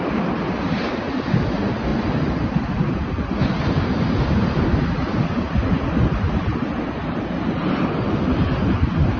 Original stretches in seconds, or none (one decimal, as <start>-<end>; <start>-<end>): 0.0-9.2

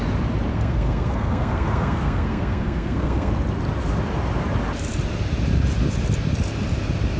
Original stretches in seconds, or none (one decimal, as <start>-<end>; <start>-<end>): 0.0-0.5; 3.3-7.2

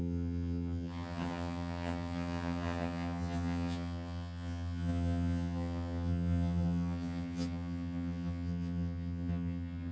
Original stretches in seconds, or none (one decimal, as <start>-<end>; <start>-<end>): none

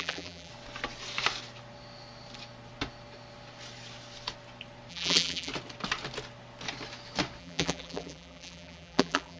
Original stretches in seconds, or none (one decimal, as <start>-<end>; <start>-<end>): 0.5-4.9; 5.5-7.4

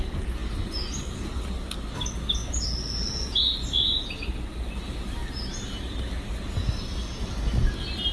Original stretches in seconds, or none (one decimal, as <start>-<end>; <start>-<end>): 0.0-8.1

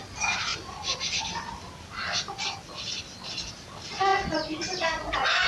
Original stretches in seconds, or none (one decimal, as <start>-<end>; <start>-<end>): 0.0-5.5

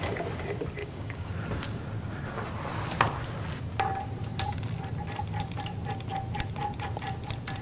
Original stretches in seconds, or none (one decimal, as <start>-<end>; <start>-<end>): 0.0-0.8; 1.3-7.6